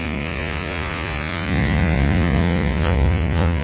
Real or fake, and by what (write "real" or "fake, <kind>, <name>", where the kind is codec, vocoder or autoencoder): fake, vocoder, Vocos